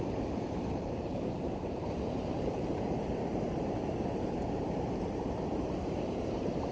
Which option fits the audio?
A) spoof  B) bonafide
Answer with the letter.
A